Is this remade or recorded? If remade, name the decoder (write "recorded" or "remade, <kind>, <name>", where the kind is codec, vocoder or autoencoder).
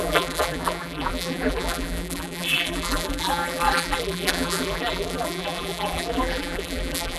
remade, vocoder, BigVGAN v2